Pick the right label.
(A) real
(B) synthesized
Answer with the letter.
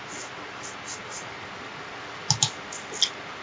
A